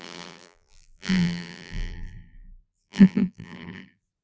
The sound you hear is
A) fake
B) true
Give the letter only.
A